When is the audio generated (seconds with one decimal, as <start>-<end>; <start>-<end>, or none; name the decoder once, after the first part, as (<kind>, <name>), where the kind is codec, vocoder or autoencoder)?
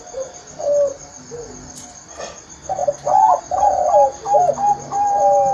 none